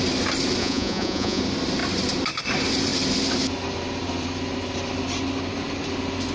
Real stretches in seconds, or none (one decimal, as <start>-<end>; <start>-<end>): 0.0-0.6; 1.4-6.3